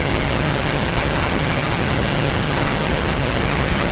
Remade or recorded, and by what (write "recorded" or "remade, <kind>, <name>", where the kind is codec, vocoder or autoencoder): remade, vocoder, HiFi-GAN